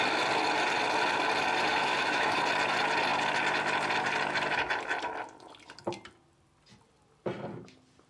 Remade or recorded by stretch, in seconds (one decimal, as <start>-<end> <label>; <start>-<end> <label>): 0.0-1.7 recorded; 1.7-2.4 remade; 2.4-8.1 recorded